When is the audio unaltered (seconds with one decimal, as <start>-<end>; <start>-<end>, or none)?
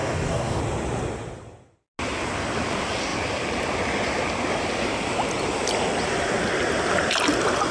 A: 0.6-7.7